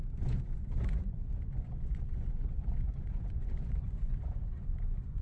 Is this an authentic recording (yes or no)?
no